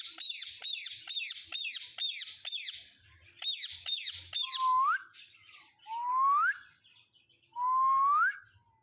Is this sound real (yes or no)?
yes